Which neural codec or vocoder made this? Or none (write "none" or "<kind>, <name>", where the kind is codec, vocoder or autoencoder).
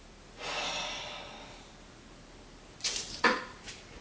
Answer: none